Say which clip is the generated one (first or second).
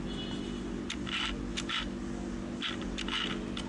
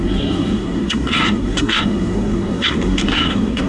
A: second